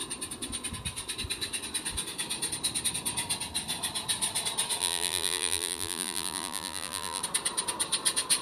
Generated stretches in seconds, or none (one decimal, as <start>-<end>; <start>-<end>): 4.8-7.2